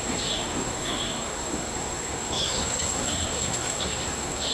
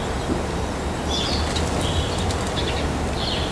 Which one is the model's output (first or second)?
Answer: first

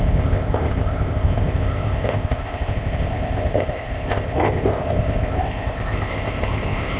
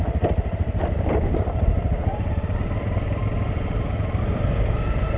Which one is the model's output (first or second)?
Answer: first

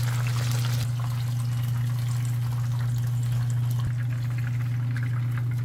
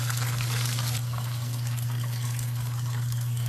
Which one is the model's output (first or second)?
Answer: second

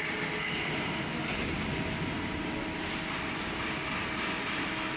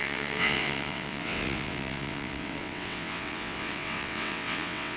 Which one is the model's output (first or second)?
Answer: second